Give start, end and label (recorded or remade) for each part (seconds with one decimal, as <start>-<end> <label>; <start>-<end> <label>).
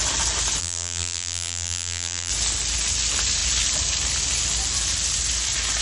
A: 0.0-0.6 recorded; 0.6-2.3 remade; 2.3-5.8 recorded